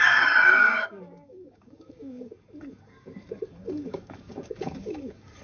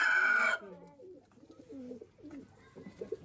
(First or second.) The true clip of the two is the second